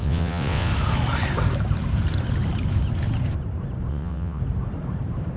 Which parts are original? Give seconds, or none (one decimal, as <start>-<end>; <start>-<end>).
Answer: 0.7-3.9; 4.4-5.4